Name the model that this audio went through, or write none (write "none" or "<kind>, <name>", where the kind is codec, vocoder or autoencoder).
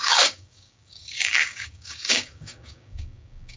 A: codec, DAC